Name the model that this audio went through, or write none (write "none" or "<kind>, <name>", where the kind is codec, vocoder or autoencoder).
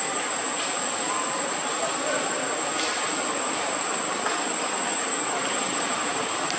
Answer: none